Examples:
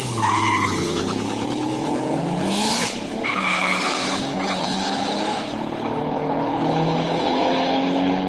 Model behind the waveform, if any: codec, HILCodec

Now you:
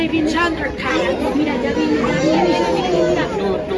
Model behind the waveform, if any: none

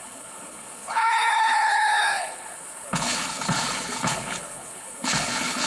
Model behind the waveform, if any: codec, HILCodec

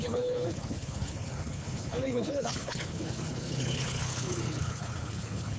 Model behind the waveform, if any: codec, HILCodec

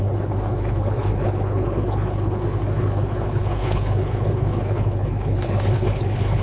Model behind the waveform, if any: codec, HILCodec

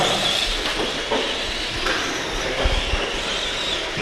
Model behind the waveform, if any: none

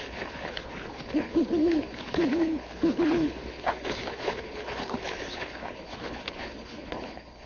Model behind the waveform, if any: codec, HILCodec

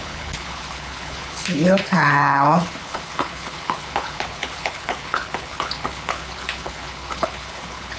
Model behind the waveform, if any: codec, HILCodec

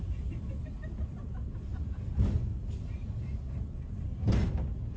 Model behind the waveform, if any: none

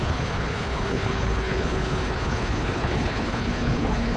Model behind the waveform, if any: codec, HILCodec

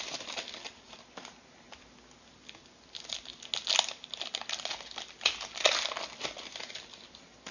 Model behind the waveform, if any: none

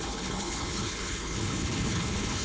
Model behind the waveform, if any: codec, HILCodec